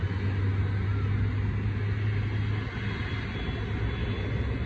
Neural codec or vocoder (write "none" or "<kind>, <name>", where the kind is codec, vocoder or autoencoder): none